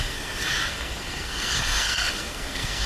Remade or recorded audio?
remade